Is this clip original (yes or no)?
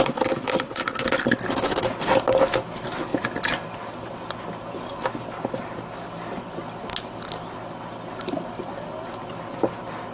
yes